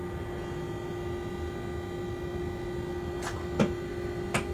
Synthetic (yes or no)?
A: no